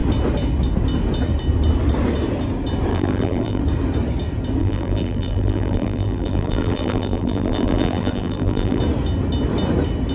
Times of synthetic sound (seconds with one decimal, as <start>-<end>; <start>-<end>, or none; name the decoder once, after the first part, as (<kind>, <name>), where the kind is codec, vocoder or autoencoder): 2.9-3.6 (vocoder, BigVGAN v2); 4.6-8.8